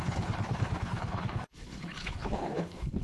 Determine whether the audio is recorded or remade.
remade